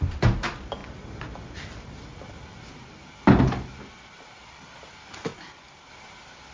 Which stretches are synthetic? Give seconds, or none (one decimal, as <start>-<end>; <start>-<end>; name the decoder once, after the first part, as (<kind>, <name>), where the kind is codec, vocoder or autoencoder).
none